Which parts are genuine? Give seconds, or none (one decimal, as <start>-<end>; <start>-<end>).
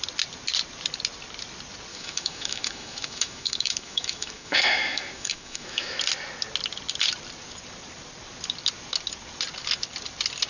0.0-1.9; 6.0-10.5